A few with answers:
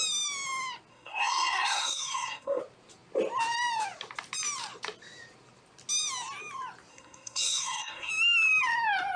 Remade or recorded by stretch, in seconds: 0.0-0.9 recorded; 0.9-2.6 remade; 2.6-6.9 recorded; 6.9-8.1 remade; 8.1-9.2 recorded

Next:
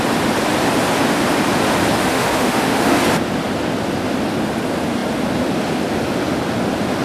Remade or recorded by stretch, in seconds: 0.0-2.1 recorded; 2.1-3.0 remade; 3.0-7.0 recorded

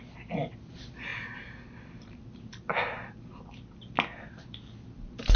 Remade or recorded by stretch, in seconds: 0.0-5.4 recorded

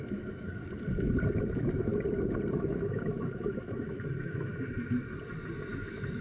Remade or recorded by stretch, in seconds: 0.0-0.6 remade; 0.6-1.5 recorded; 1.5-1.9 remade; 1.9-2.5 recorded; 2.5-4.5 remade; 4.5-5.7 recorded; 5.7-6.2 remade

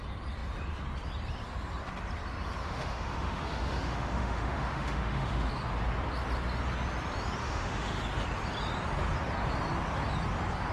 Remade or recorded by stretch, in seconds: 0.0-2.6 recorded; 2.6-5.5 remade; 5.5-7.4 recorded; 7.4-8.0 remade; 8.0-10.7 recorded

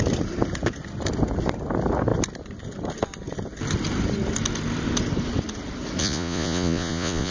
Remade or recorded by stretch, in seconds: 0.0-6.0 recorded; 6.0-7.3 remade